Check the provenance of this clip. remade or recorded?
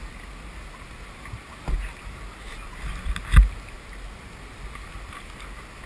recorded